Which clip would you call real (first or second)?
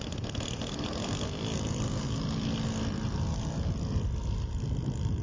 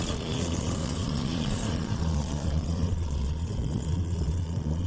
first